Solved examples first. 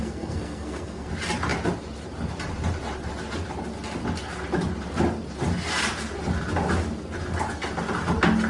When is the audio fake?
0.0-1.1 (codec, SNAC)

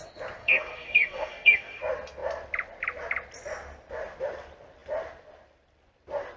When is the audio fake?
0.4-1.8 (codec, SNAC)

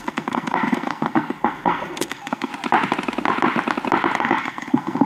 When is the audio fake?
0.0-2.5 (codec, SNAC); 4.2-5.1